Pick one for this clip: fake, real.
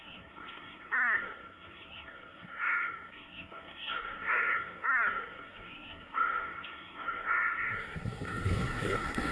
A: fake